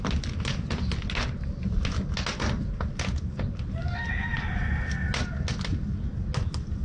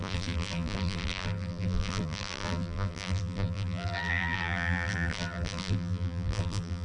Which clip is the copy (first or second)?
second